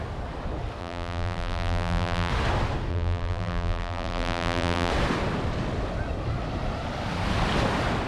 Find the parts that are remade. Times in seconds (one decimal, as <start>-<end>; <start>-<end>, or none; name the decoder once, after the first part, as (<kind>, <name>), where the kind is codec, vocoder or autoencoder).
0.8-2.3 (vocoder, BigVGAN v2); 2.9-4.9